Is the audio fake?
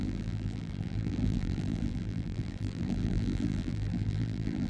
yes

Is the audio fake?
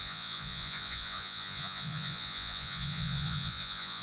yes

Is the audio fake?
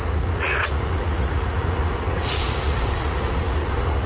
yes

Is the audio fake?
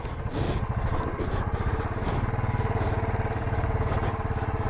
no